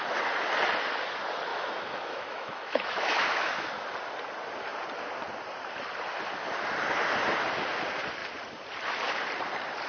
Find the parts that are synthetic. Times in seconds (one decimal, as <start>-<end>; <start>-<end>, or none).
1.5-3.7